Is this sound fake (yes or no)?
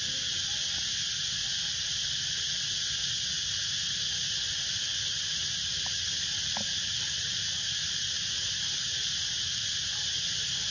no